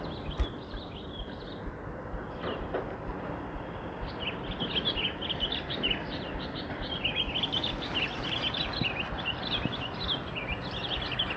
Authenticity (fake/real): real